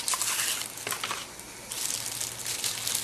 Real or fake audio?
real